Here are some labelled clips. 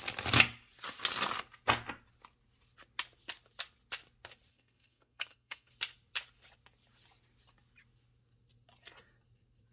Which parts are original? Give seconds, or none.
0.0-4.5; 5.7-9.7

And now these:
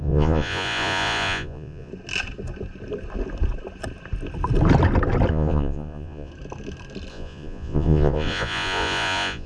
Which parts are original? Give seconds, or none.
1.9-5.3; 6.3-7.1

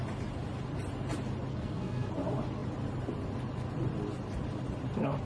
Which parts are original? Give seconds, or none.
0.0-1.5; 2.1-5.3